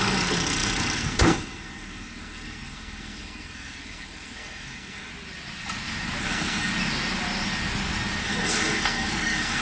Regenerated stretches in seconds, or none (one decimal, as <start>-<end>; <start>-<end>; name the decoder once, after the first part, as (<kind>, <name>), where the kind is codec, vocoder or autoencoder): 0.0-5.1 (codec, SNAC); 6.2-6.7; 8.2-9.6

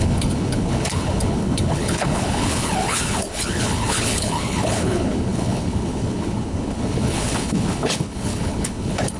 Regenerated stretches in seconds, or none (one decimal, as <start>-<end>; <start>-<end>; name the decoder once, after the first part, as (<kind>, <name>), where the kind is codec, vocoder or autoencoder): 0.0-9.2 (codec, HILCodec)